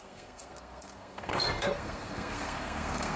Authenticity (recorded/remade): remade